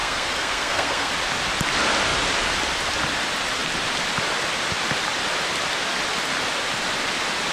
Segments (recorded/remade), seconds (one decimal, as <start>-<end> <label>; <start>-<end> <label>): 0.0-1.1 remade; 1.1-7.5 recorded